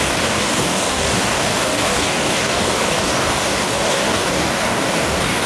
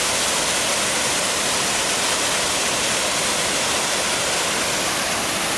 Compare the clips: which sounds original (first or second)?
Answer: second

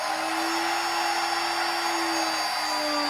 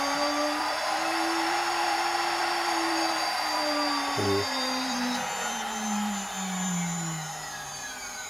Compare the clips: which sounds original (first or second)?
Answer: first